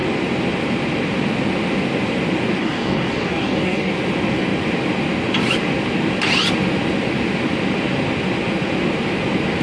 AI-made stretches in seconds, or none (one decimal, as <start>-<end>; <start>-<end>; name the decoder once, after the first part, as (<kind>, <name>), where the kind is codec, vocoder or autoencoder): 2.6-3.9 (codec, DAC)